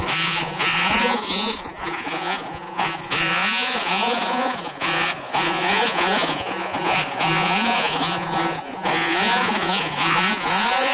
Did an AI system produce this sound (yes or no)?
yes